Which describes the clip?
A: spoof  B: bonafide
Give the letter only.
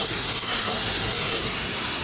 A